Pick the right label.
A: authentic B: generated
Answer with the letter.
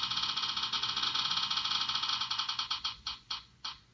B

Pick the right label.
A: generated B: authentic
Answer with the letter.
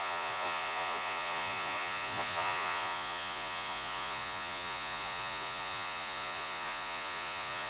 A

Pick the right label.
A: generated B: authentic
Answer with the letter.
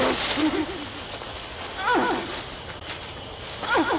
B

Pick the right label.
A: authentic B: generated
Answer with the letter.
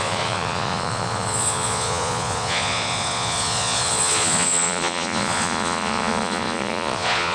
B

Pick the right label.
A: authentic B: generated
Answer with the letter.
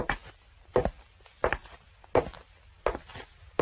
A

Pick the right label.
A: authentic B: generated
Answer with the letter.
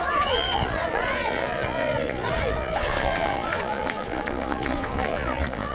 B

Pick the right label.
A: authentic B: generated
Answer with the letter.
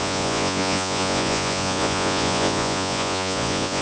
B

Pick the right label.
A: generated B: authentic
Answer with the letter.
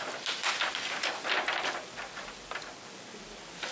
B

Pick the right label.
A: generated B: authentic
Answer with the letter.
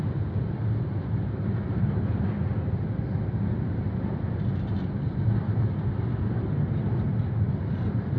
B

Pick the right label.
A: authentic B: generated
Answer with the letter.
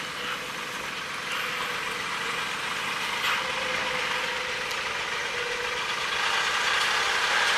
A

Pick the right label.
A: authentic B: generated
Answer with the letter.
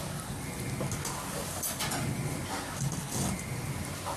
A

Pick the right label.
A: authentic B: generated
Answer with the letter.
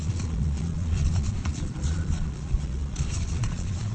B